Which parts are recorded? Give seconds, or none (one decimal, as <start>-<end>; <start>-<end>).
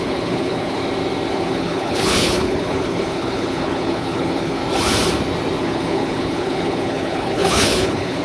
0.8-1.3; 4.6-5.6